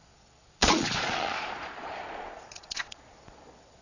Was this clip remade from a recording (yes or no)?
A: yes